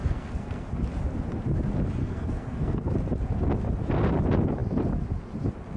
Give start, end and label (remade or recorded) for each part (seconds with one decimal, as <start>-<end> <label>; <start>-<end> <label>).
0.0-0.7 remade; 0.7-2.0 recorded; 2.0-2.9 remade; 2.9-5.8 recorded